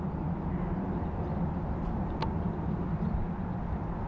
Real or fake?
real